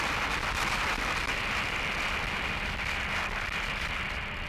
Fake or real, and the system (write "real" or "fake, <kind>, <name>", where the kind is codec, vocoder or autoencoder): real